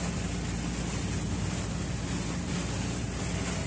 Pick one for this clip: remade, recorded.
recorded